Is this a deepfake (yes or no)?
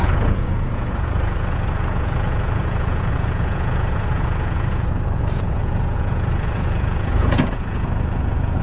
yes